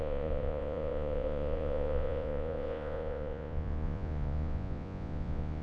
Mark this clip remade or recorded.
remade